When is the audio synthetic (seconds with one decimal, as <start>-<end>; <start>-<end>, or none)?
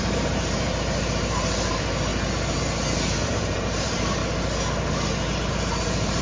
0.0-2.1; 2.6-4.2; 5.5-6.2